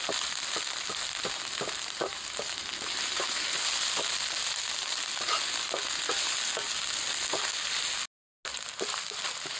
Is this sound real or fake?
real